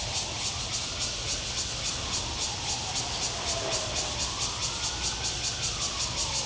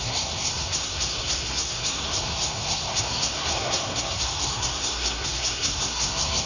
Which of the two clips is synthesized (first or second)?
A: second